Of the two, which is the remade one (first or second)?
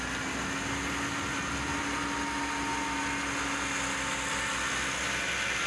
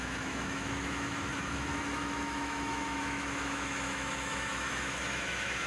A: second